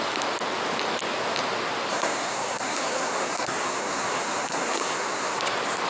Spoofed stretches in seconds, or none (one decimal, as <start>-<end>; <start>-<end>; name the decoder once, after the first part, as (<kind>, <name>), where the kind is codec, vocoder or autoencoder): 1.9-5.4 (codec, SNAC)